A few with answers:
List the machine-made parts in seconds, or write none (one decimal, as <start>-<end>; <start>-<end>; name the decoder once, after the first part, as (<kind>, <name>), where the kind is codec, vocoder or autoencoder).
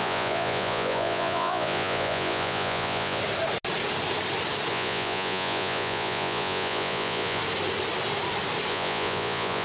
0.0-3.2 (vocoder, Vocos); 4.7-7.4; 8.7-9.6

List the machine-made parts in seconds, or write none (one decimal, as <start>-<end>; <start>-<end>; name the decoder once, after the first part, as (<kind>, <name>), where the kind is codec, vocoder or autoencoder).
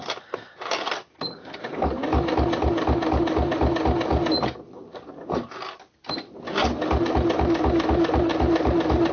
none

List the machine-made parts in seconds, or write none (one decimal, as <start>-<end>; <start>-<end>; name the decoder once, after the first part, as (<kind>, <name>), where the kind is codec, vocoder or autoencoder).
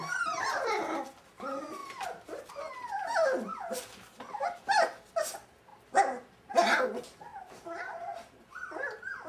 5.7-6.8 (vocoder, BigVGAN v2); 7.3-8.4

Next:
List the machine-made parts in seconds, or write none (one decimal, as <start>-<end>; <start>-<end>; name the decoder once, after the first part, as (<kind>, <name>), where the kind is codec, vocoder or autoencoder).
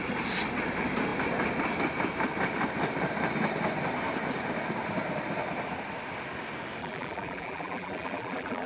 6.8-8.7 (vocoder, BigVGAN v2)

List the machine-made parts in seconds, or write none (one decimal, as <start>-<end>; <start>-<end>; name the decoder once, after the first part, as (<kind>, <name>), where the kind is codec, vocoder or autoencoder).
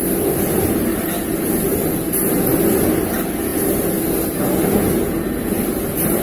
none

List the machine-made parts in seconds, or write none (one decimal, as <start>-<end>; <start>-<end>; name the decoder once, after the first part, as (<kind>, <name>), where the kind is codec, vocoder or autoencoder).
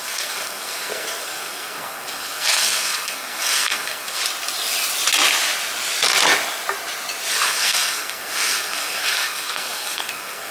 0.0-4.2 (codec, SNAC); 7.3-10.5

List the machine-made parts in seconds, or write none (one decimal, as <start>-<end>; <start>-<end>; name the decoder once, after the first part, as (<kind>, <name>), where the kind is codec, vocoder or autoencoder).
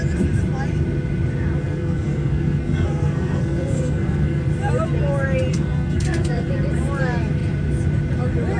1.6-4.5 (codec, SNAC); 5.5-6.5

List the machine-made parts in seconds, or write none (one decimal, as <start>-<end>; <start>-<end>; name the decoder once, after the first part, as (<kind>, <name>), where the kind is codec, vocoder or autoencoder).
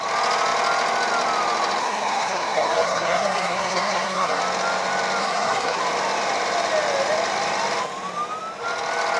1.8-4.4 (codec, SNAC); 5.2-5.8